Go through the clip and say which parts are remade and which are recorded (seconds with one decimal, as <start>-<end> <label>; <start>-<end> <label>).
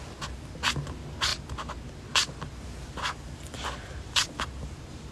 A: 0.0-5.1 recorded